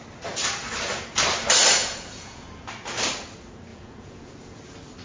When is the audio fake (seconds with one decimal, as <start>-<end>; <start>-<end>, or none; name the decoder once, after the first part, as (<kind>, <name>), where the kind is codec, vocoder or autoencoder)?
1.8-2.5 (vocoder, Vocos); 3.7-4.6